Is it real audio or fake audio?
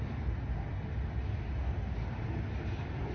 real